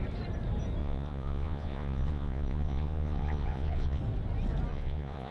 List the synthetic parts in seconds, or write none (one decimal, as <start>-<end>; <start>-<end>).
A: 0.8-4.0; 4.7-5.3